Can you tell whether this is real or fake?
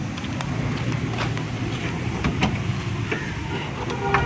real